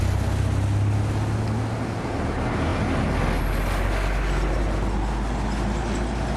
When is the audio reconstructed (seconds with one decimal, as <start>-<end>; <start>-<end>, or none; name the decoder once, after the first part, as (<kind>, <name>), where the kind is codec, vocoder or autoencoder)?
none